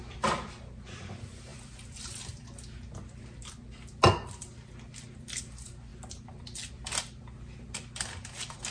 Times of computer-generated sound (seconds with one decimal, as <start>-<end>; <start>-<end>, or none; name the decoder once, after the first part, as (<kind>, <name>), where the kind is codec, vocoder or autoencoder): none